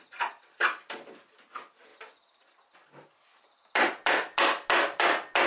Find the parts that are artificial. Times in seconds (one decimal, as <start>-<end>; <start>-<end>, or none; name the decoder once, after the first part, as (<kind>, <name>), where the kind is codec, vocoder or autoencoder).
none